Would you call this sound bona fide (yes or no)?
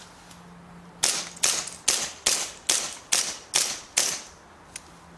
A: yes